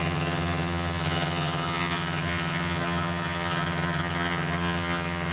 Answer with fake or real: fake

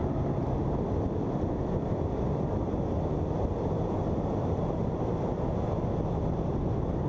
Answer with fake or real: real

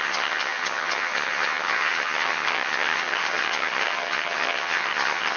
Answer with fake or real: fake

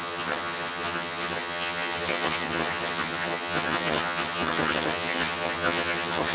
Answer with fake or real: fake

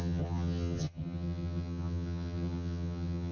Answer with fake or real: fake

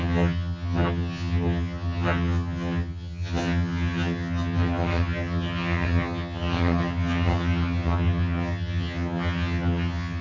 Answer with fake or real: fake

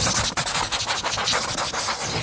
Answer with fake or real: real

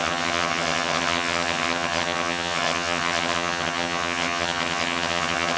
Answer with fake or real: fake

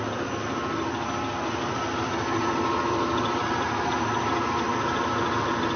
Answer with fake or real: real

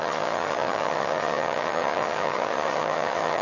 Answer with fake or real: fake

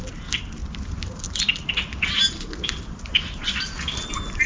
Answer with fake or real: real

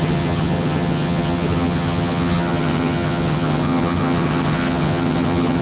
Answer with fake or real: fake